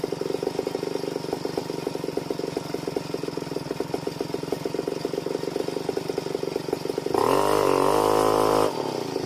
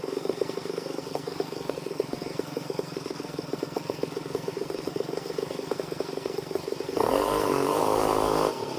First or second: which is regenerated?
second